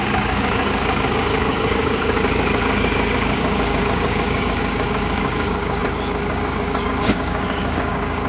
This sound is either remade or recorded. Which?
remade